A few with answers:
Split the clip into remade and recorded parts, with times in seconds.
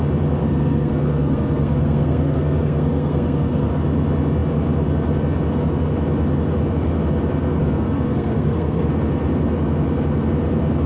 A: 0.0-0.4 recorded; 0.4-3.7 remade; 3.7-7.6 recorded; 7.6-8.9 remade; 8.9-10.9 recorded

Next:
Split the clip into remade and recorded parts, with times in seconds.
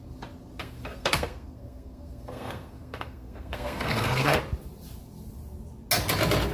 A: 0.0-0.6 recorded; 0.6-4.4 remade; 4.4-6.5 recorded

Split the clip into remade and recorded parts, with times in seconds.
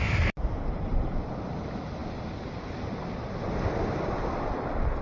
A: 0.0-5.0 recorded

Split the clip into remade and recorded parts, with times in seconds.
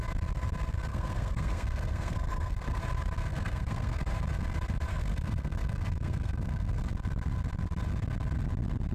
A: 0.0-0.9 recorded; 0.9-2.8 remade; 2.8-3.3 recorded; 3.3-4.0 remade; 4.0-4.9 recorded; 4.9-6.9 remade; 6.9-8.9 recorded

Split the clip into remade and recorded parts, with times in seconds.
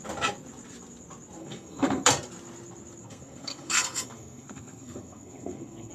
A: 0.0-1.4 recorded; 1.4-2.1 remade; 2.1-3.0 recorded; 3.0-5.9 remade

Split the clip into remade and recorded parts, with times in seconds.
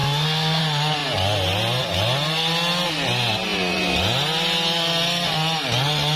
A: 0.0-0.6 remade; 0.6-6.2 recorded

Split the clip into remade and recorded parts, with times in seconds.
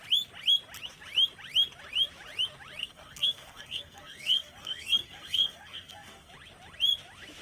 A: 0.0-2.8 recorded; 2.8-6.3 remade; 6.3-7.4 recorded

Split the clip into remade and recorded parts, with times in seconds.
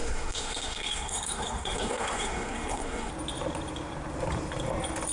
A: 0.0-3.1 remade; 3.1-5.1 recorded